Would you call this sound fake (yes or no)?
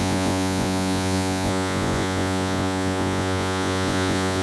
yes